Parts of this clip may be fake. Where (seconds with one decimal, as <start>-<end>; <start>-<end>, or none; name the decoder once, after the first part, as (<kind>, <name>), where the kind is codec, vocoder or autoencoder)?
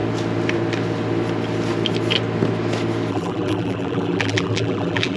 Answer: 3.1-5.2 (vocoder, BigVGAN v2)